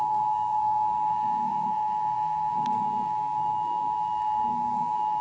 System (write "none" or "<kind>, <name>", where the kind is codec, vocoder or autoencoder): codec, SNAC